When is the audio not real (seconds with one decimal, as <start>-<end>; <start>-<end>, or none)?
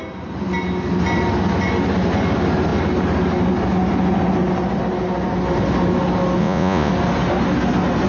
6.4-6.9